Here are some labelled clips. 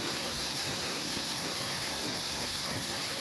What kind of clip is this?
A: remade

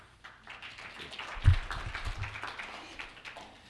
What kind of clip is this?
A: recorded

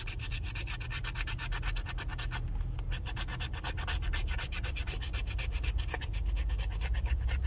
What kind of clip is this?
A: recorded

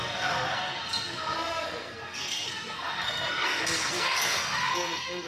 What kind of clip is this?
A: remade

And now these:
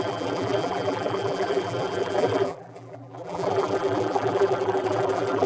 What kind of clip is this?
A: remade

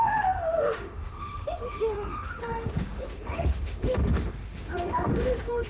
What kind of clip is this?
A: remade